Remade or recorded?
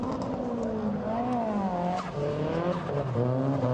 recorded